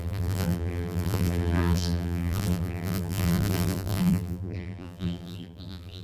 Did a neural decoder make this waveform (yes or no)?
yes